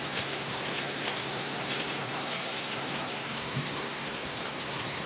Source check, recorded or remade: remade